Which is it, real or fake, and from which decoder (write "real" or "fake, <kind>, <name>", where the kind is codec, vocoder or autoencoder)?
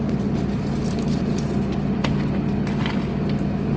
real